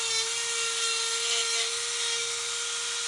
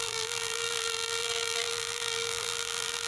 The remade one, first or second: second